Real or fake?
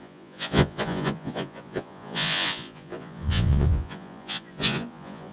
fake